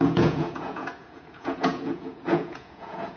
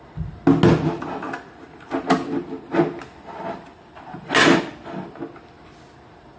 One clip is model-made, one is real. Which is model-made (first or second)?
first